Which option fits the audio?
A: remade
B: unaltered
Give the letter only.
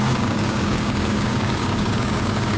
A